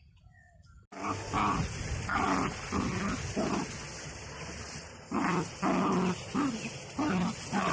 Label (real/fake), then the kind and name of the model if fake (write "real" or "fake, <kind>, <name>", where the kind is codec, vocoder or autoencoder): real